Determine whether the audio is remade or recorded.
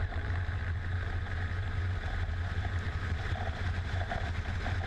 remade